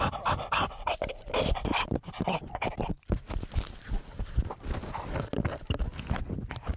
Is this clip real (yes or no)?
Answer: yes